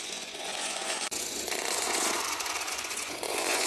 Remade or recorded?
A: remade